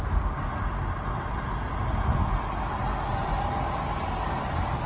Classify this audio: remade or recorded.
recorded